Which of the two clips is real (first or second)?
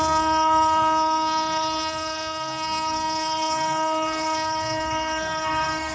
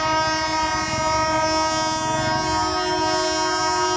second